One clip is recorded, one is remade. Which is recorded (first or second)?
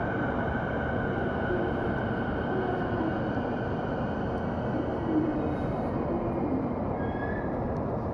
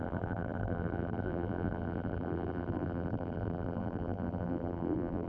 first